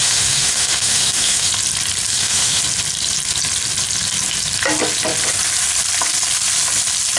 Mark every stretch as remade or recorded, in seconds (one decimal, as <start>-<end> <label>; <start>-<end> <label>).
0.0-1.5 remade; 1.5-2.1 recorded; 2.1-2.6 remade; 2.6-7.2 recorded